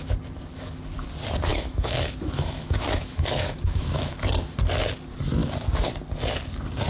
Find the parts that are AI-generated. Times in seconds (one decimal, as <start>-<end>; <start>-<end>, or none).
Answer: 1.5-4.2

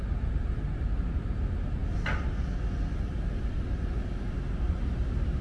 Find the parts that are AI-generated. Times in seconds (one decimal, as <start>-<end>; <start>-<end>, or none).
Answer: none

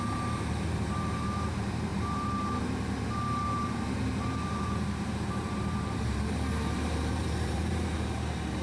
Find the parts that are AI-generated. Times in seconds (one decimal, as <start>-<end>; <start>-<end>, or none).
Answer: 0.0-8.6